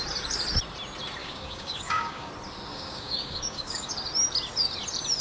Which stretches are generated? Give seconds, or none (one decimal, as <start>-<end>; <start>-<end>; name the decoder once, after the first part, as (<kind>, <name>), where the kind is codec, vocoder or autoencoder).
1.2-2.3 (codec, DAC); 2.7-3.9